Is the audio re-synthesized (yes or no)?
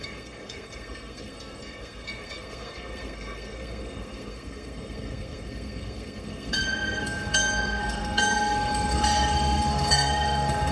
yes